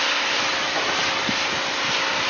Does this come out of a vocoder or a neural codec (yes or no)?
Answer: no